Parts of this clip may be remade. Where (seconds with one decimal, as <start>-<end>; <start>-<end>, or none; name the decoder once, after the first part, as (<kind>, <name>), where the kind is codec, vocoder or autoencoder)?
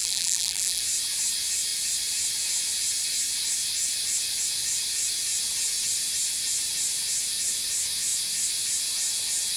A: 0.0-0.8 (vocoder, BigVGAN v2)